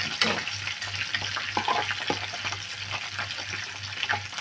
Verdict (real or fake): real